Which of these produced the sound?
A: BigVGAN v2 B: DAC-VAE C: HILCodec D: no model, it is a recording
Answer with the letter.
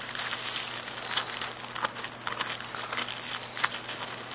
D